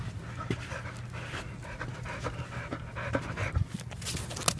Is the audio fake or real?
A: real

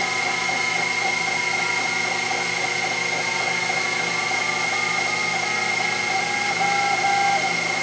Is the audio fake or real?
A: real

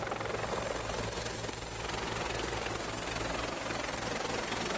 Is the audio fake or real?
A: real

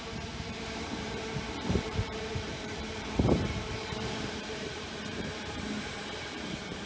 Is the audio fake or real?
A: fake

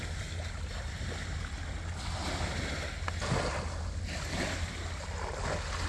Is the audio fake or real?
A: real